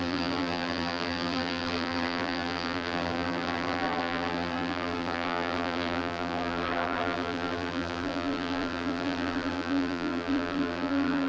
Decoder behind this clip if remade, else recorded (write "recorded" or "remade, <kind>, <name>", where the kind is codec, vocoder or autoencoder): remade, vocoder, BigVGAN v2